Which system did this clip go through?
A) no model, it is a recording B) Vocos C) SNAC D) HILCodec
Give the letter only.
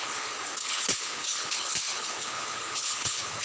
D